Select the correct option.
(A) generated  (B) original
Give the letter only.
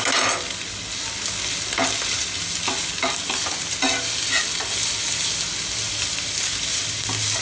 B